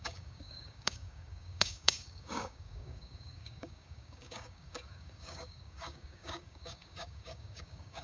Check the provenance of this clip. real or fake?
fake